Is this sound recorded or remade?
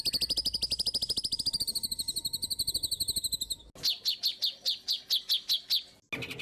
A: recorded